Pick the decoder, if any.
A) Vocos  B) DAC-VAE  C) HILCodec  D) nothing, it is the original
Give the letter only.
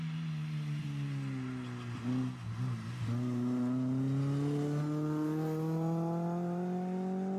D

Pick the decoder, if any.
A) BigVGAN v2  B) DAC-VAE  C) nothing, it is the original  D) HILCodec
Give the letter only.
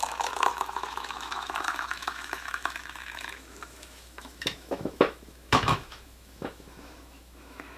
B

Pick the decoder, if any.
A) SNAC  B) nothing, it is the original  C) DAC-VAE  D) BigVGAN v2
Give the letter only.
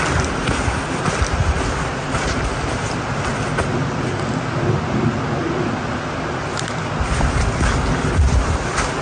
B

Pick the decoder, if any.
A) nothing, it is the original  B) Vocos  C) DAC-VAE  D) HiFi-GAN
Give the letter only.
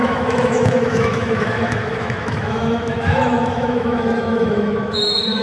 C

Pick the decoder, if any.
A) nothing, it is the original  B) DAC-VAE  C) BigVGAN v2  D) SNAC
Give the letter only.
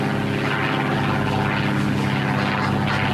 A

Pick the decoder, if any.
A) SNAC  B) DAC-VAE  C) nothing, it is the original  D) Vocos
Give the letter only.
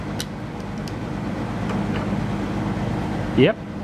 C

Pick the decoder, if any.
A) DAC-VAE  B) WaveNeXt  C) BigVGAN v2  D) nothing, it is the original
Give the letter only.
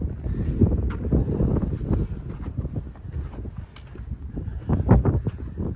D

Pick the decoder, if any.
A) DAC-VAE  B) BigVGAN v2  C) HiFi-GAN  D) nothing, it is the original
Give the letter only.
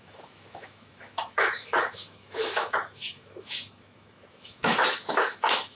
A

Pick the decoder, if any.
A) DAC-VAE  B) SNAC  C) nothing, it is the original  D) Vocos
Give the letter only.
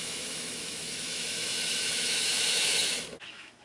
A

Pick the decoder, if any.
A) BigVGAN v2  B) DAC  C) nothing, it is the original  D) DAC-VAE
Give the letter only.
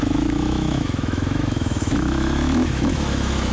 D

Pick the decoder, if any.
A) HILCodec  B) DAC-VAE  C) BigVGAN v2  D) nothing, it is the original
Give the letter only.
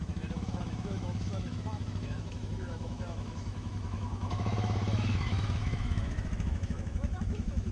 B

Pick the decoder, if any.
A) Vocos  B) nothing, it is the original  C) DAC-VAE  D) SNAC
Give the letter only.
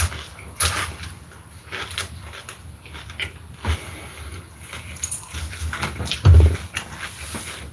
B